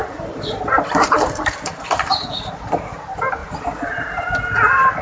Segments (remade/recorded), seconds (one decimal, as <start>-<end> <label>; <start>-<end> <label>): 0.0-3.0 remade; 3.0-3.4 recorded; 3.4-4.3 remade; 4.3-5.0 recorded